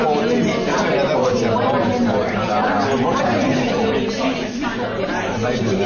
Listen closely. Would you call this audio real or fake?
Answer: real